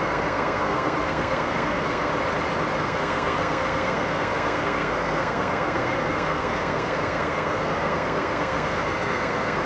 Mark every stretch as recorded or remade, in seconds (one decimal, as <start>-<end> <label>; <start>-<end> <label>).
0.0-2.1 remade; 2.1-2.8 recorded; 2.8-9.7 remade